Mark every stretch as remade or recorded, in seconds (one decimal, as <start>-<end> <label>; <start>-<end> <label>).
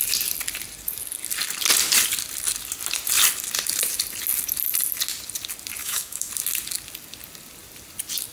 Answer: 0.0-5.8 recorded; 5.8-6.3 remade; 6.3-8.3 recorded